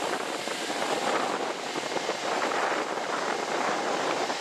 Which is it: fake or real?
real